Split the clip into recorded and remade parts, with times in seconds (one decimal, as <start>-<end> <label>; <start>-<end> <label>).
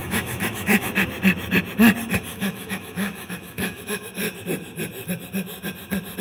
0.0-0.9 remade; 0.9-2.3 recorded; 2.3-4.1 remade; 4.1-6.2 recorded